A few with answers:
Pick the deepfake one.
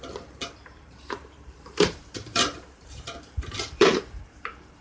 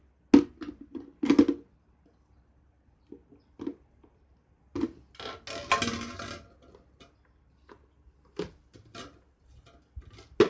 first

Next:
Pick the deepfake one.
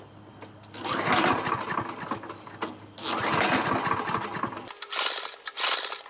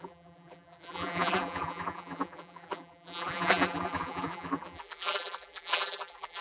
second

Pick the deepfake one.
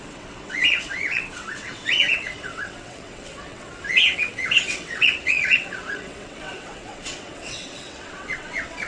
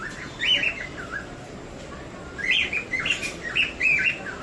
first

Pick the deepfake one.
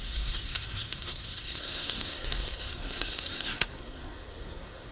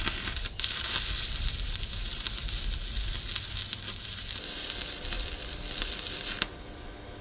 first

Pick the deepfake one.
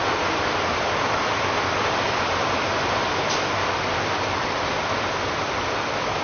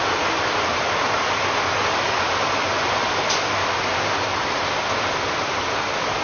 first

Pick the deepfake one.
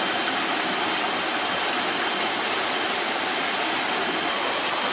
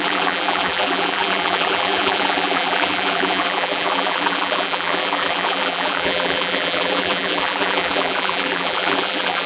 second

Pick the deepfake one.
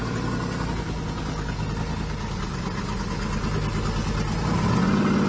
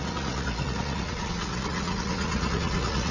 second